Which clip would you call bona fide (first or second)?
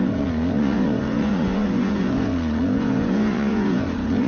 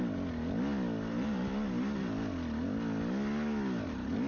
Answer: second